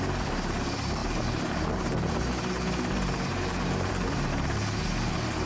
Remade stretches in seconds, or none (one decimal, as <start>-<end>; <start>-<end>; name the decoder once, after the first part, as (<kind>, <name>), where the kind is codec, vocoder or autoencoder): 1.0-4.3 (vocoder, BigVGAN v2)